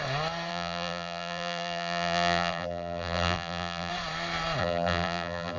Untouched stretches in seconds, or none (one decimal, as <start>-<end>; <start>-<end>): 0.0-0.5; 3.9-4.6